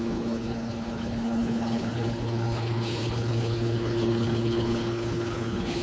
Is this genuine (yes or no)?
no